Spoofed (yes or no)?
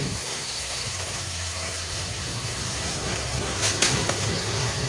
yes